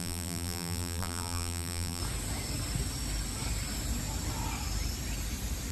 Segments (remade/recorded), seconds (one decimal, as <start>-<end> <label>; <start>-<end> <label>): 0.0-2.0 remade; 2.0-5.7 recorded